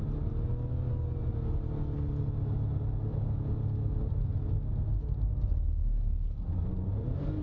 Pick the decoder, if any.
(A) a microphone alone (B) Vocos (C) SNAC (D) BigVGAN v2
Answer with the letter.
A